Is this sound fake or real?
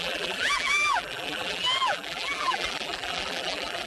fake